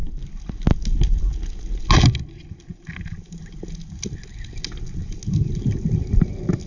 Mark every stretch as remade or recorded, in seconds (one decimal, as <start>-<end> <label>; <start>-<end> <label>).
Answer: 0.0-6.7 recorded